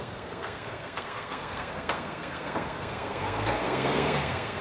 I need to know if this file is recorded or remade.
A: remade